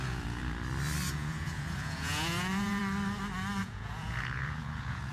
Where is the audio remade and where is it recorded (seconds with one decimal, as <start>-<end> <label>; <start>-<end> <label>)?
0.0-0.4 remade; 0.4-1.1 recorded; 1.1-2.8 remade; 2.8-3.6 recorded; 3.6-5.1 remade